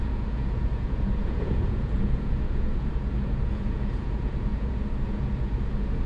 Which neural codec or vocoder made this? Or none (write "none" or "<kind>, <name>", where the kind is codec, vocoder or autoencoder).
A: vocoder, Vocos